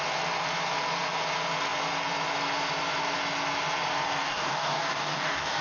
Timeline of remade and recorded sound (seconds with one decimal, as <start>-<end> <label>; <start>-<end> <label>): 0.0-4.2 recorded; 4.2-5.6 remade